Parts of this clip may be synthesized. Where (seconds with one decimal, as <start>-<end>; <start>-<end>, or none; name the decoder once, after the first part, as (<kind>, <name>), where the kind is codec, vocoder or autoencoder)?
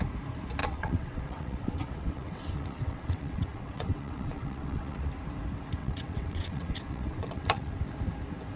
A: 0.6-5.1 (vocoder, WaveNeXt); 5.8-7.8